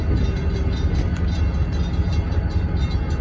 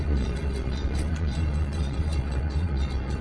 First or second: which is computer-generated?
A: second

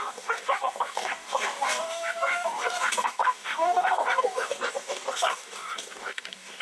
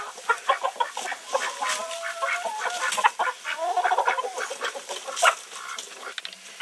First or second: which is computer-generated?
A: first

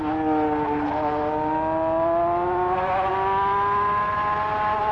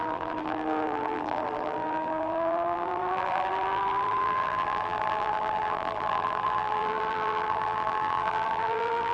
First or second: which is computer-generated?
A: second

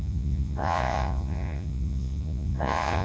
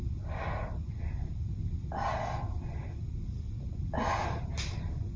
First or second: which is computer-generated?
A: first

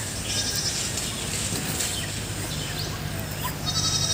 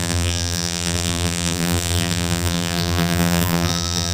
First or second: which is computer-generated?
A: second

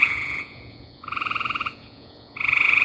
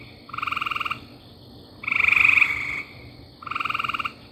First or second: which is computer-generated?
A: first